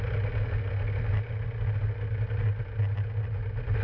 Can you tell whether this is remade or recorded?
recorded